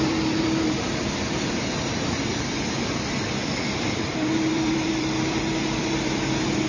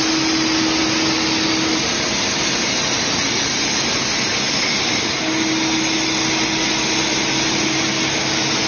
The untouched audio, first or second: second